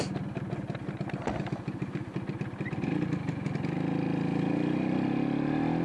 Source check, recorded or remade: recorded